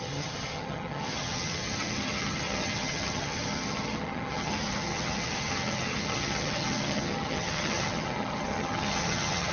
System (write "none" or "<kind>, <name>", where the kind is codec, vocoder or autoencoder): vocoder, HiFi-GAN